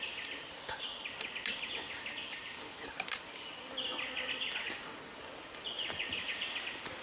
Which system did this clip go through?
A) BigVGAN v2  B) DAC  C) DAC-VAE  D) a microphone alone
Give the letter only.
D